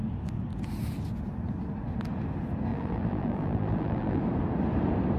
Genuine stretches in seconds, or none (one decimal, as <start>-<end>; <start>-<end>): 0.0-2.7; 4.2-5.2